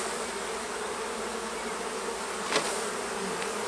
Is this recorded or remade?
recorded